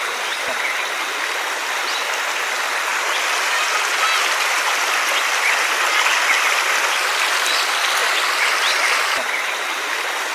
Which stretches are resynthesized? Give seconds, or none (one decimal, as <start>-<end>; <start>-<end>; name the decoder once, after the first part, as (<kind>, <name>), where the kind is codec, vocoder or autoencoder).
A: none